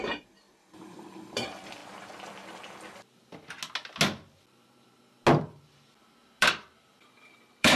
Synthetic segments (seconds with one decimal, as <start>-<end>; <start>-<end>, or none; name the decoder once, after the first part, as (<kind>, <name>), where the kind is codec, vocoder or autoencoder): 0.0-1.8 (vocoder, BigVGAN v2); 6.4-7.8